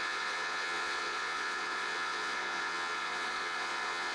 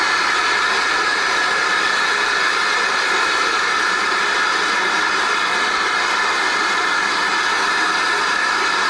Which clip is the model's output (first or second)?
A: first